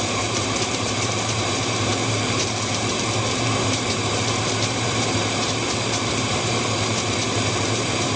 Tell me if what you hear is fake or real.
fake